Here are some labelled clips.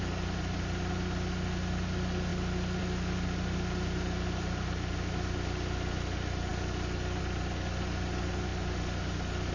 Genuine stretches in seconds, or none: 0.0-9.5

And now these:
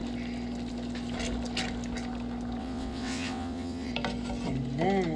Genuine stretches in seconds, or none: 0.0-2.6; 3.9-5.2

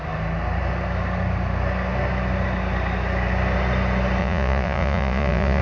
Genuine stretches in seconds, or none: 0.0-4.2

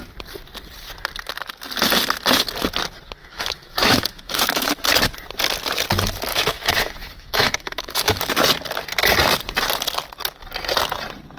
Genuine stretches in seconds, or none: 0.0-3.2; 4.7-6.3; 8.2-11.4

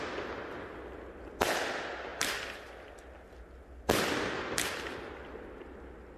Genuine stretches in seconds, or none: 0.0-6.2